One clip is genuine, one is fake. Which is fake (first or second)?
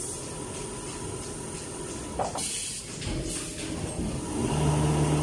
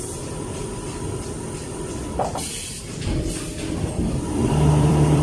second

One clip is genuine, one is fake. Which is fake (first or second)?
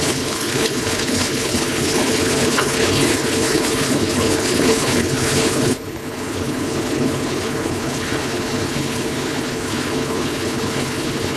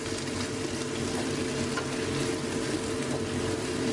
first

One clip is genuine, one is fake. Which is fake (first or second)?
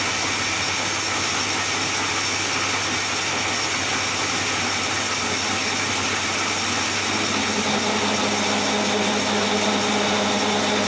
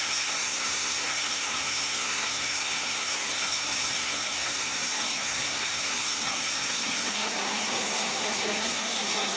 second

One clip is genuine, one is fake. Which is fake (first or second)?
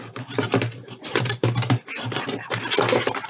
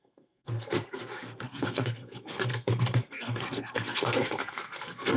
second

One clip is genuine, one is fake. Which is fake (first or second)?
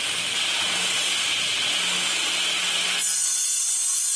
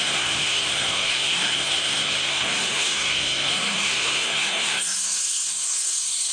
second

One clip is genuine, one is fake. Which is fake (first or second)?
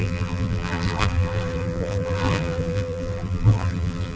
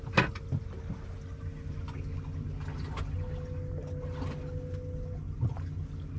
first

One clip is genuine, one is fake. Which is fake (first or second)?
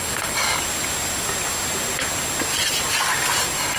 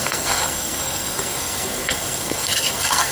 second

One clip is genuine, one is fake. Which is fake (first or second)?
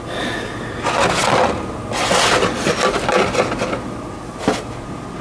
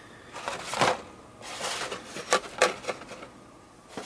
second